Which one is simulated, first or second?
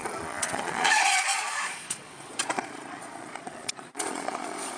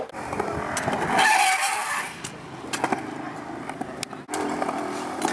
first